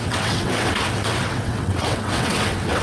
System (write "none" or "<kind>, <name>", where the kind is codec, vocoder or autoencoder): vocoder, WaveNeXt